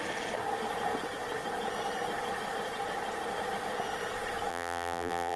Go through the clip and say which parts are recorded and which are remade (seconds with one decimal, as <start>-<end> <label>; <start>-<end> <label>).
0.0-4.5 recorded; 4.5-5.4 remade